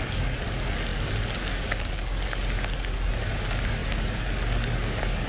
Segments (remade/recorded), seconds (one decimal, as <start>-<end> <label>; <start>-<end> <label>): 0.0-5.3 remade